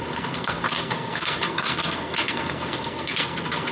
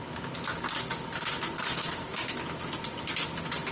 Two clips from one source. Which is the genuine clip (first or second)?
second